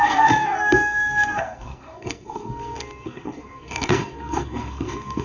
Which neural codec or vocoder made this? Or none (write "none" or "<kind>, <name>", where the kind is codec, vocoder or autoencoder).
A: codec, SNAC